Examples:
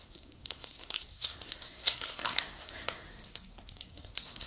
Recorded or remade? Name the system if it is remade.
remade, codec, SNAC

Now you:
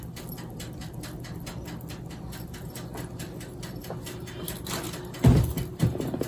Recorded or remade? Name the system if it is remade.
recorded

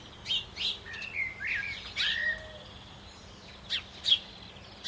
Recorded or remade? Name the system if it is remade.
recorded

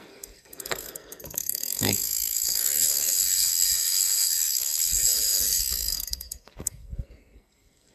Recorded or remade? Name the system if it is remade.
remade, codec, SNAC